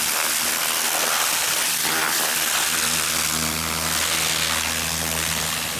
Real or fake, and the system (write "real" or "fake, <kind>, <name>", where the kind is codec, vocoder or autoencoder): real